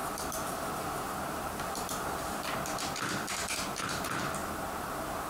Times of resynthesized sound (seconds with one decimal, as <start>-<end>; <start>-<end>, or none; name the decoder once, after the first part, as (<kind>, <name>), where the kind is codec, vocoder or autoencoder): 0.0-2.5 (vocoder, BigVGAN v2)

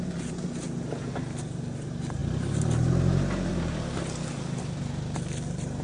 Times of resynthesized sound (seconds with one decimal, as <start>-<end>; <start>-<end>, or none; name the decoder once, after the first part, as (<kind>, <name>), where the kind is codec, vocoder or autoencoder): none